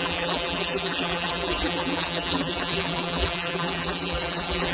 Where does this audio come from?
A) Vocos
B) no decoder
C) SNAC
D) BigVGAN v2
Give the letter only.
D